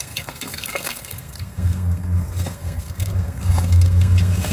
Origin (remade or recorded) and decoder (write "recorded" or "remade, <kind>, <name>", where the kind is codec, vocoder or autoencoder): remade, codec, SNAC